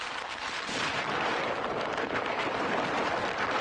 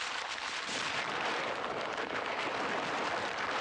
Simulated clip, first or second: second